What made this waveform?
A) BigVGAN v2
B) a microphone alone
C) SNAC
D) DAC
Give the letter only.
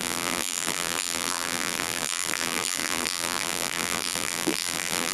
A